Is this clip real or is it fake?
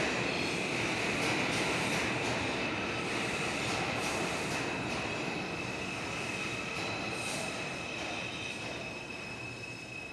real